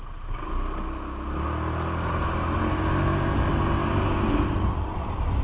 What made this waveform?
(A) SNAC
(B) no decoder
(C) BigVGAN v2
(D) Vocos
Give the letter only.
B